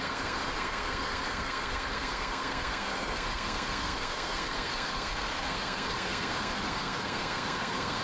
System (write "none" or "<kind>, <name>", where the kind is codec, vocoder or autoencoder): codec, SNAC